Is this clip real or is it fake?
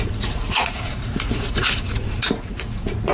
fake